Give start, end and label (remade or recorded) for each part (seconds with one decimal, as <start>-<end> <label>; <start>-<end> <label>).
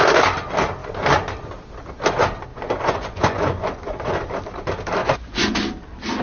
0.0-2.5 recorded; 2.5-4.1 remade; 4.1-5.0 recorded; 5.0-5.6 remade; 5.6-6.2 recorded